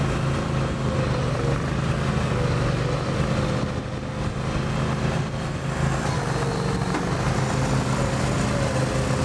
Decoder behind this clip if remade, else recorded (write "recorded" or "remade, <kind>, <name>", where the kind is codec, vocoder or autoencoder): recorded